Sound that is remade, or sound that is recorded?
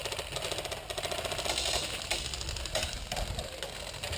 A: recorded